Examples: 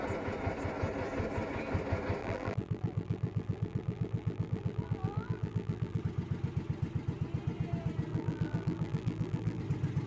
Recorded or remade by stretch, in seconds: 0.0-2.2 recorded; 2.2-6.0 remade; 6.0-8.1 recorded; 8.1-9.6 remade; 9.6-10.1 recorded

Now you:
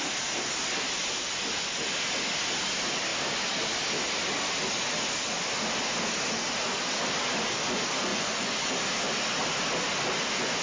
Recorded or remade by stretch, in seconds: 0.0-8.1 recorded; 8.1-8.7 remade; 8.7-10.6 recorded

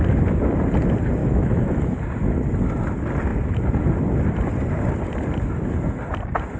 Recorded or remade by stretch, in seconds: 0.0-1.2 recorded; 1.2-1.8 remade; 1.8-6.6 recorded

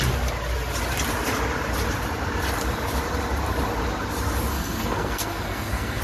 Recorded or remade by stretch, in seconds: 0.0-4.5 recorded; 4.5-6.0 remade

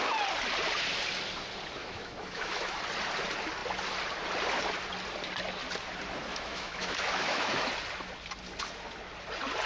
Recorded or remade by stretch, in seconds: 0.0-1.8 recorded; 1.8-2.8 remade; 2.8-6.3 recorded; 6.3-7.7 remade; 7.7-9.7 recorded